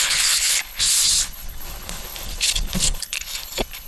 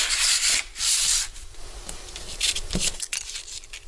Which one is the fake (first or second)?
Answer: first